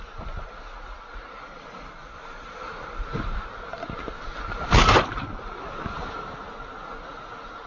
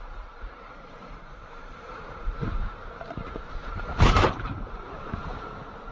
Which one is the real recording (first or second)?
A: first